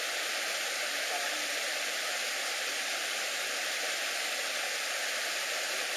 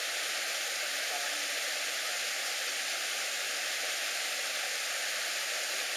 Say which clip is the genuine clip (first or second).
second